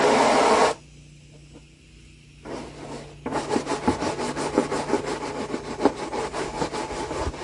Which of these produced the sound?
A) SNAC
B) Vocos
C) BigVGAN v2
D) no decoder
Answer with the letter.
D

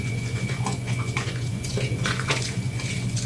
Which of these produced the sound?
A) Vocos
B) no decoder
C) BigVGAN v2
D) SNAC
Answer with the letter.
A